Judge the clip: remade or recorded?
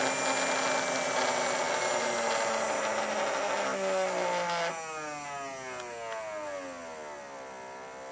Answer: recorded